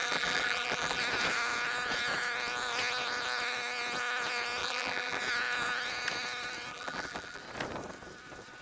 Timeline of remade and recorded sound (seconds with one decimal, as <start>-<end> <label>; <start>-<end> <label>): 0.0-1.0 remade; 1.0-4.6 recorded; 4.6-5.2 remade; 5.2-6.7 recorded; 6.7-7.4 remade; 7.4-8.6 recorded